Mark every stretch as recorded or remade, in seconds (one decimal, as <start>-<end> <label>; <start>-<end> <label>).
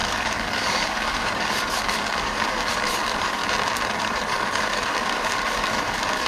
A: 0.0-3.4 remade; 3.4-4.0 recorded; 4.0-6.3 remade